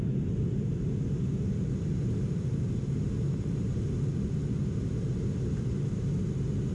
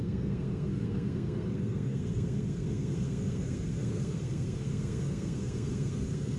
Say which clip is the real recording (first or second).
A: first